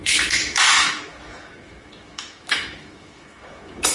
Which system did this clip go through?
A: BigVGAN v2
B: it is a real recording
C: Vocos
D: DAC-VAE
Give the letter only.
D